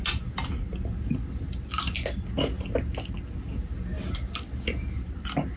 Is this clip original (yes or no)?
yes